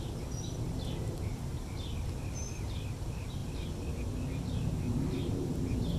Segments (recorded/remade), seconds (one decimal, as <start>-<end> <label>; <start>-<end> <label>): 0.0-6.0 recorded

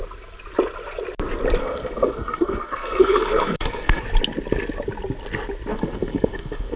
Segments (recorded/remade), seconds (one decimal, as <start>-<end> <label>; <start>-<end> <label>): 0.0-1.6 recorded; 1.6-4.0 remade; 4.0-5.7 recorded; 5.7-6.8 remade

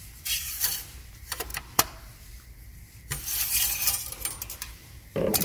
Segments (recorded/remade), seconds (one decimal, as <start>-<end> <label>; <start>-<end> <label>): 0.0-0.6 remade; 0.6-1.1 recorded; 1.1-1.5 remade; 1.5-4.7 recorded; 4.7-5.4 remade

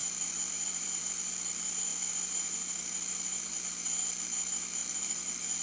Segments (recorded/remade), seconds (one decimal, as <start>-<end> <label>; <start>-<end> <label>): 0.0-1.0 remade; 1.0-4.8 recorded; 4.8-5.6 remade